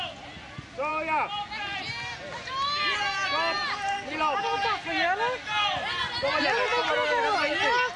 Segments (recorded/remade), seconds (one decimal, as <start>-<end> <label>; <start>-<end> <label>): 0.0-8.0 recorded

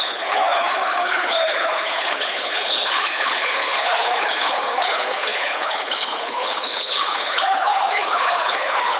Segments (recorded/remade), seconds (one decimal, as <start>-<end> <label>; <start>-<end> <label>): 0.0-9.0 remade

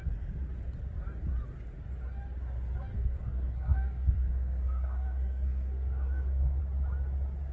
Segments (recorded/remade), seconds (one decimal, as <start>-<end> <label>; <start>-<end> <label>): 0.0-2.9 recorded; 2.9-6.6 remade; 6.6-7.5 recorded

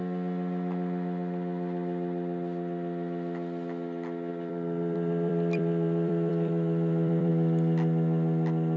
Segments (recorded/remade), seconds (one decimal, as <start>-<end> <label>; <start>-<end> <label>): 0.0-4.3 recorded; 4.3-7.3 remade; 7.3-8.8 recorded